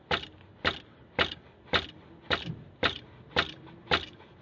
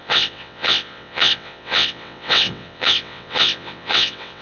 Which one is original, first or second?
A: first